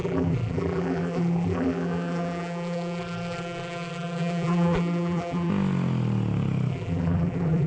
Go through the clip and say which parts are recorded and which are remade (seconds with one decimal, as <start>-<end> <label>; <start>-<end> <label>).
0.0-5.5 remade; 5.5-6.7 recorded; 6.7-7.7 remade